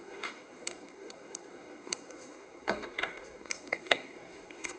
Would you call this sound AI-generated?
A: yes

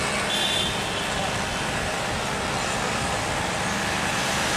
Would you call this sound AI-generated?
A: no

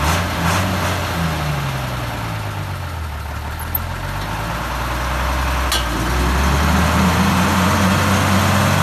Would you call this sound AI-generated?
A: no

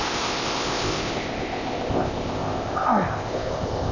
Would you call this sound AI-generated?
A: yes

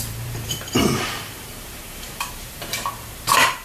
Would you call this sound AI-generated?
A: yes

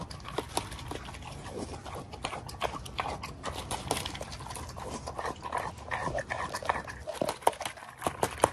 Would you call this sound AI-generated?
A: no